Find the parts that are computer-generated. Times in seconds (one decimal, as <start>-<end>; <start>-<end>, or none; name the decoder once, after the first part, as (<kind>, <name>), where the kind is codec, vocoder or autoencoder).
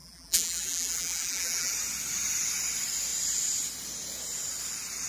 0.0-1.7 (vocoder, BigVGAN v2)